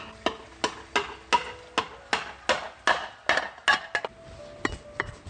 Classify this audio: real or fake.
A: real